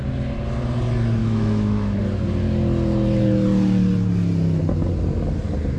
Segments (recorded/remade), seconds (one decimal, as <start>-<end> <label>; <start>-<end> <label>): 0.0-1.2 recorded; 1.2-2.0 remade; 2.0-5.8 recorded

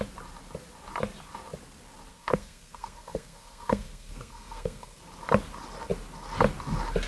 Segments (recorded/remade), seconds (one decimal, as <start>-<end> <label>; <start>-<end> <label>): 0.0-2.1 recorded; 2.1-5.0 remade; 5.0-7.1 recorded